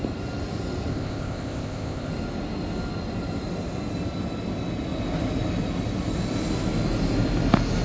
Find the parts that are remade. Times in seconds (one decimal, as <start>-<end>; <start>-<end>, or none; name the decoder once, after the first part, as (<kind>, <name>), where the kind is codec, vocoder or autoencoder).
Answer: 0.9-2.1 (codec, ZipCodec)